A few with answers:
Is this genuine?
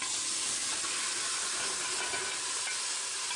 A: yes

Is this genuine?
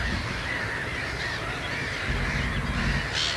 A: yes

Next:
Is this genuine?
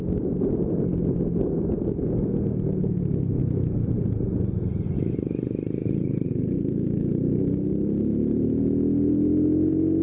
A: yes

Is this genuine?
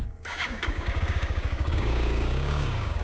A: no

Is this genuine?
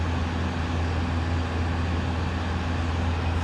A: yes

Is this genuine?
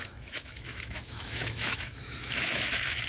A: no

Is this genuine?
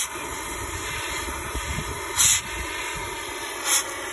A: yes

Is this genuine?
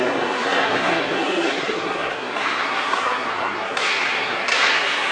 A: no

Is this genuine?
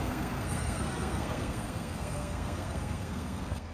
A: no